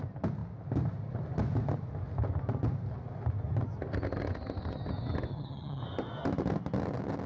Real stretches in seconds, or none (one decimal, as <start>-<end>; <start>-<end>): 0.0-5.3; 5.8-7.3